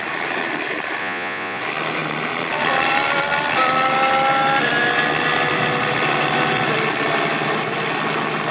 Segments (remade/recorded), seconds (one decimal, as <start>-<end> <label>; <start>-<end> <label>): 0.0-1.0 recorded; 1.0-1.6 remade; 1.6-8.5 recorded